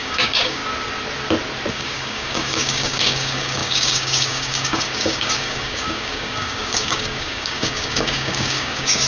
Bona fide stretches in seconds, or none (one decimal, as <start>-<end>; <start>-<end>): 0.6-1.7